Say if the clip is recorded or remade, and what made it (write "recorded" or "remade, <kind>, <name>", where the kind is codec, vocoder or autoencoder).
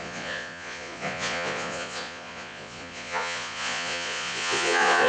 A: remade, vocoder, Vocos